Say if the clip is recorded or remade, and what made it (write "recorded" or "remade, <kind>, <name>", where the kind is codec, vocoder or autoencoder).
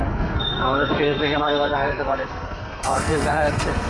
remade, codec, SNAC